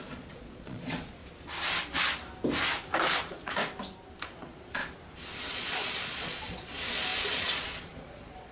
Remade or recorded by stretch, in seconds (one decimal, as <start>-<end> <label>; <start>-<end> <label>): 0.0-1.2 remade; 1.2-3.2 recorded; 3.2-3.6 remade; 3.6-4.2 recorded; 4.2-4.8 remade; 4.8-5.5 recorded; 5.5-8.5 remade